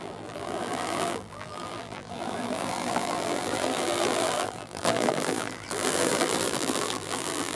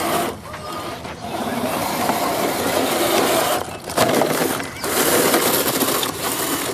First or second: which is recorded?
second